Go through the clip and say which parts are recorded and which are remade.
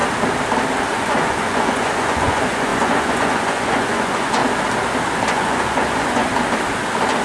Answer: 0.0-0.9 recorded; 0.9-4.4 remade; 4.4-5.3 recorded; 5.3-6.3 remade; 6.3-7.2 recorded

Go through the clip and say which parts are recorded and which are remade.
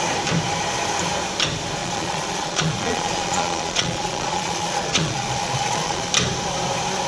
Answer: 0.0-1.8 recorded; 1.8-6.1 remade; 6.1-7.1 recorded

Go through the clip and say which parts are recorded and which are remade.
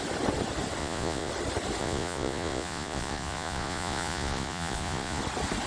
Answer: 0.0-0.8 recorded; 0.8-1.3 remade; 1.3-1.8 recorded; 1.8-5.2 remade; 5.2-5.7 recorded